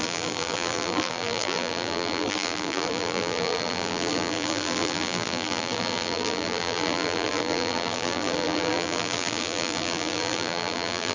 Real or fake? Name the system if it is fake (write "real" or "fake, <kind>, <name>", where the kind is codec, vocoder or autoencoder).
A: fake, vocoder, BigVGAN v2